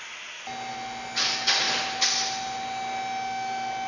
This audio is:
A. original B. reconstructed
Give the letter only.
A